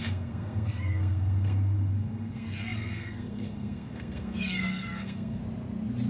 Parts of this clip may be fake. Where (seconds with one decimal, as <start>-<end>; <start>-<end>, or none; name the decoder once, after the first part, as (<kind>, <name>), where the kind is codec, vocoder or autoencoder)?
0.0-5.4 (codec, SNAC)

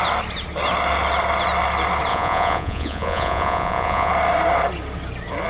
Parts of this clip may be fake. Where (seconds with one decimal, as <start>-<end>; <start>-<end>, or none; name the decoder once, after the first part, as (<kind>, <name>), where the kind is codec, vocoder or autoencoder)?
2.1-4.1 (vocoder, Vocos)

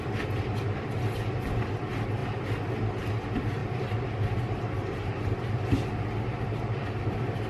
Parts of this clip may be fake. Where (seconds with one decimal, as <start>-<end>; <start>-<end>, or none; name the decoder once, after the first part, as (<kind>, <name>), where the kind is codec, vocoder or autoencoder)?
0.0-2.2 (vocoder, BigVGAN v2); 3.1-7.5

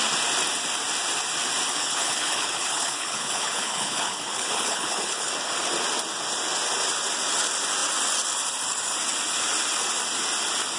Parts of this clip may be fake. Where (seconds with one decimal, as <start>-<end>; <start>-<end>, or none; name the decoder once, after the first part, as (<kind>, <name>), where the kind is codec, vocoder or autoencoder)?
1.7-5.3 (codec, HILCodec)

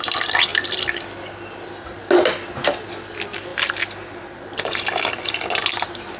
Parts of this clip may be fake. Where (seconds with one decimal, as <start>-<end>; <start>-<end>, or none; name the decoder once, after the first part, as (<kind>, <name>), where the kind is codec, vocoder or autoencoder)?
none

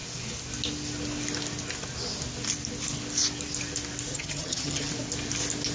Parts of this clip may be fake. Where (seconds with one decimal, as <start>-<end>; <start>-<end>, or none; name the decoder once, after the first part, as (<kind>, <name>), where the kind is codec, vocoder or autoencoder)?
4.1-4.9 (vocoder, HiFi-GAN)

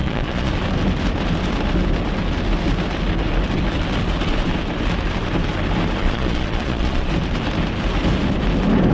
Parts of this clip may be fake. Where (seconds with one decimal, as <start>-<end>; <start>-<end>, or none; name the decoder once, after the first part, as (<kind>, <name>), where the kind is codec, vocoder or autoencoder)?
0.0-0.5 (vocoder, Vocos); 6.0-7.1

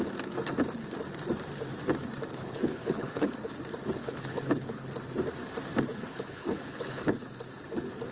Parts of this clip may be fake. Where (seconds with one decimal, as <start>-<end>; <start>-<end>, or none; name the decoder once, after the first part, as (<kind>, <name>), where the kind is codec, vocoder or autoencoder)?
2.3-3.3 (codec, HILCodec); 4.0-4.9; 5.9-7.2